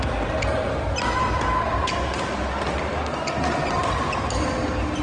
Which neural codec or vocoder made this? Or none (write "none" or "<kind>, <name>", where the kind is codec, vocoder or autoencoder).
none